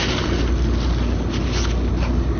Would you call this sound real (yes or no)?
yes